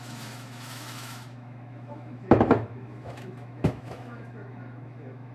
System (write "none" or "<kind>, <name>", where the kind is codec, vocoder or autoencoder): autoencoder, DAC-VAE